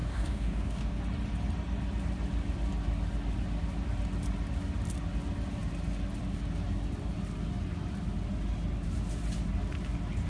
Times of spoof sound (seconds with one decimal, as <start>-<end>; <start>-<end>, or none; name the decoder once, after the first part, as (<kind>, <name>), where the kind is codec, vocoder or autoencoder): 0.0-1.0 (codec, DAC)